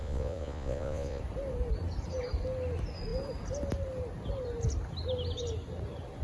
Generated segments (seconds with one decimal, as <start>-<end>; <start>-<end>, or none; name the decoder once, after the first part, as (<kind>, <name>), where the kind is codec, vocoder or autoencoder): 0.0-1.2 (vocoder, Vocos)

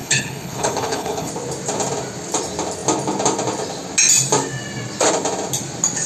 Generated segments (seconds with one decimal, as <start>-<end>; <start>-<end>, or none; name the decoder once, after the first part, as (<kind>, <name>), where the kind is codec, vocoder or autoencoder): 0.0-1.3 (codec, HILCodec)

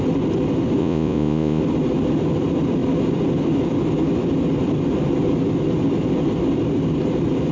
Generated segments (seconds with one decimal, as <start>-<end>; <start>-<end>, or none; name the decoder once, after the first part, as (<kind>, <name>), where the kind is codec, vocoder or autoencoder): 0.8-1.6 (vocoder, Vocos)

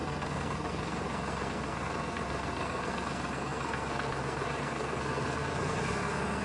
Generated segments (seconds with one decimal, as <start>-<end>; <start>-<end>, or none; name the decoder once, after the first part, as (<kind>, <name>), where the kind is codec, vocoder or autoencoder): 0.0-6.4 (codec, SNAC)